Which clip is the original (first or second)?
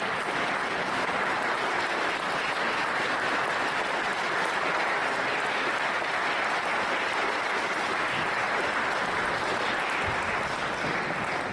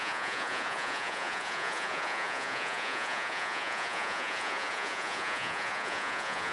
first